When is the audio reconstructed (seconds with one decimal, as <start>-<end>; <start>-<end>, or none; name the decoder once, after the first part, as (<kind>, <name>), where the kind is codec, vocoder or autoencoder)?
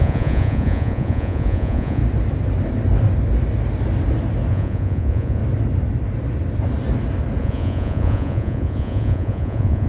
0.0-2.0 (vocoder, Vocos); 4.5-5.4; 7.4-9.9